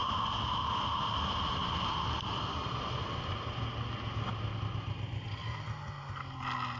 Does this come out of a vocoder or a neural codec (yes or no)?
no